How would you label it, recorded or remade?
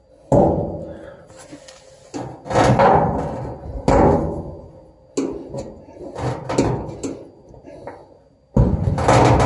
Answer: recorded